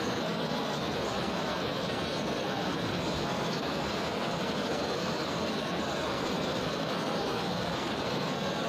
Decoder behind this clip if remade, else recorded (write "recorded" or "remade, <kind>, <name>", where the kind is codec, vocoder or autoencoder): remade, codec, SNAC